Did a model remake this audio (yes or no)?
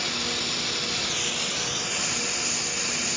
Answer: no